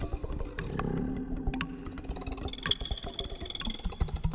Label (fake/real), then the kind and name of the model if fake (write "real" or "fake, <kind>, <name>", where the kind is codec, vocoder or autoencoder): real